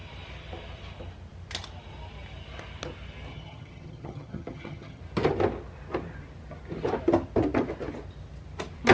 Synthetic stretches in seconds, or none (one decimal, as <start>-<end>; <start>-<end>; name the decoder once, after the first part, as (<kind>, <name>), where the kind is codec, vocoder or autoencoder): 3.3-5.0 (vocoder, HiFi-GAN)